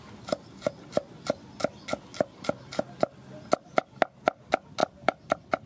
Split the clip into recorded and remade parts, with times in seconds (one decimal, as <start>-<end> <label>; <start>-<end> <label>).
0.0-5.7 recorded